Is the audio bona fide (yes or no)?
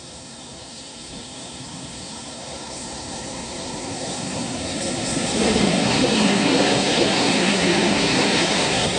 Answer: no